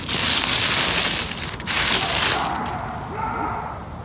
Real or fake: real